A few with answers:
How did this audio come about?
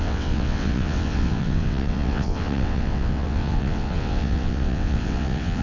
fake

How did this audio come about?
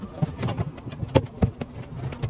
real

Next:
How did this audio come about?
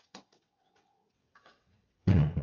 fake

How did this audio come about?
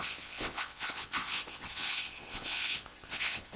fake